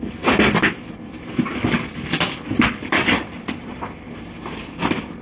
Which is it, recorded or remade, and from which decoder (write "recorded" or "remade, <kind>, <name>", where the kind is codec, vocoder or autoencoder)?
recorded